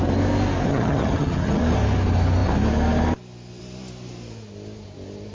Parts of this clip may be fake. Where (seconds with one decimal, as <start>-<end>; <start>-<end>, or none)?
0.7-1.6